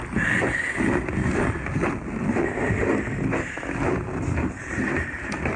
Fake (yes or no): no